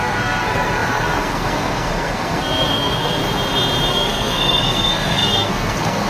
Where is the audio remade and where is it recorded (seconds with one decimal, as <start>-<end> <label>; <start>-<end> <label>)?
0.0-3.2 remade; 3.2-3.9 recorded; 3.9-6.1 remade